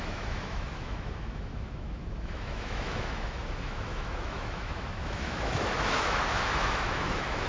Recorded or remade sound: remade